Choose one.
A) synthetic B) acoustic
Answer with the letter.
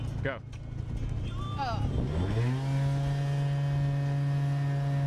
B